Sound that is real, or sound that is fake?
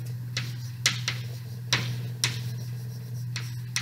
real